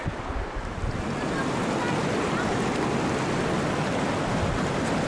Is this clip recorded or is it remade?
recorded